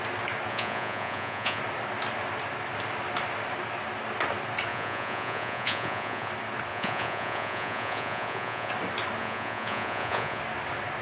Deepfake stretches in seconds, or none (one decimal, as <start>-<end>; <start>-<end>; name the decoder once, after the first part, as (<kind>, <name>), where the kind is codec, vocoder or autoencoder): 0.5-1.6 (vocoder, Vocos); 4.7-6.3; 6.7-8.7; 9.2-10.4